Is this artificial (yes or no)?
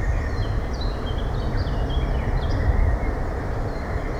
yes